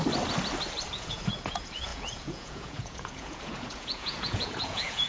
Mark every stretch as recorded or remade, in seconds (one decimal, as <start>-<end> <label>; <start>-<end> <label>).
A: 0.0-0.9 recorded; 0.9-5.1 remade